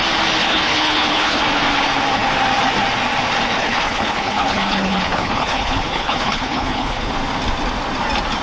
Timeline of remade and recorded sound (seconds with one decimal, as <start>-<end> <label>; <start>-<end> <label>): 0.0-0.4 recorded; 0.4-1.4 remade; 1.4-3.6 recorded; 3.6-7.1 remade; 7.1-8.4 recorded